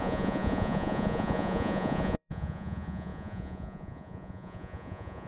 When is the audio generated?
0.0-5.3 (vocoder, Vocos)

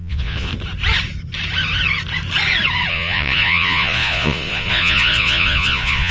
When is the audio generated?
0.0-0.5 (vocoder, Vocos); 2.9-6.1

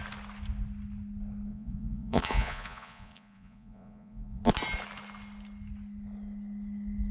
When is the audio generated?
1.5-4.4 (vocoder, Vocos)

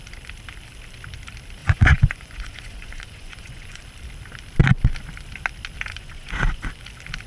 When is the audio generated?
1.6-3.8 (vocoder, Vocos); 5.9-6.8

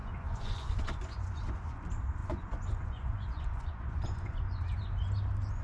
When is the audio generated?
0.0-1.8 (vocoder, Vocos); 2.2-5.1

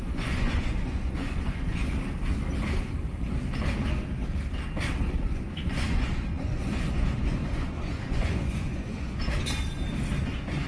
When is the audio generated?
0.0-1.8 (vocoder, Vocos); 5.2-9.2; 10.2-10.7